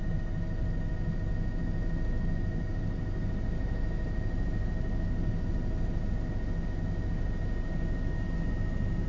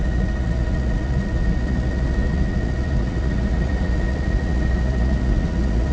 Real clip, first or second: first